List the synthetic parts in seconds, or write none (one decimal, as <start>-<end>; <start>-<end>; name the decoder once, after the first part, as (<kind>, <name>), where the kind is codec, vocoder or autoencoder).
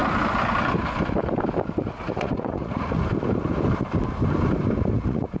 1.8-3.0 (vocoder, Vocos); 4.9-5.4